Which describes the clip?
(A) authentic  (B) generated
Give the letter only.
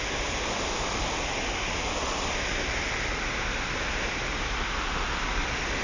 A